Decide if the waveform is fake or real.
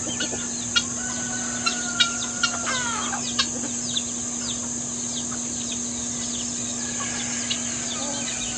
real